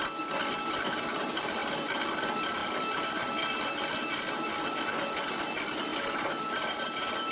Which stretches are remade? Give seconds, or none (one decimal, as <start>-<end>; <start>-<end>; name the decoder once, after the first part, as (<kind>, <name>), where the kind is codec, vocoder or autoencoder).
none